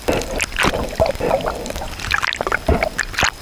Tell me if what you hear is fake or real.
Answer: real